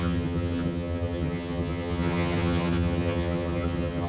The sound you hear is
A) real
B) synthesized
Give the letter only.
B